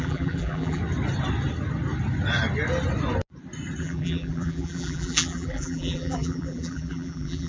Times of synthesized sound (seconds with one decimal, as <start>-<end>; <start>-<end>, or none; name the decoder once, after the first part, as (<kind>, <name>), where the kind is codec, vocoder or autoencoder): 0.0-0.8 (vocoder, BigVGAN v2); 3.8-7.5